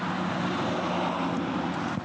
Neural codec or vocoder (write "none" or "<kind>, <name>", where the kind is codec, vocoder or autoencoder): none